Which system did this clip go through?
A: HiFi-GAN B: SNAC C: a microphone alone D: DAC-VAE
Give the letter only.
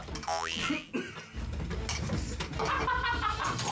C